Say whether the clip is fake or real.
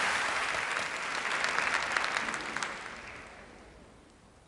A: real